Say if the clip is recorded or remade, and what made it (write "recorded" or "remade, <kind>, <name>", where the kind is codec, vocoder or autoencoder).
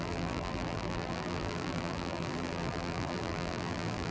remade, vocoder, BigVGAN v2